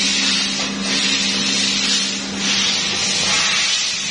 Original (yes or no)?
yes